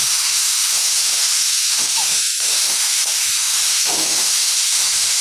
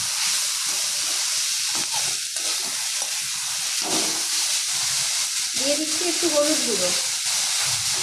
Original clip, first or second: second